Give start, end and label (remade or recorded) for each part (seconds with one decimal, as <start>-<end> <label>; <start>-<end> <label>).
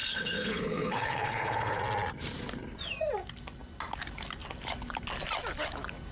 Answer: 0.0-1.8 remade; 1.8-6.1 recorded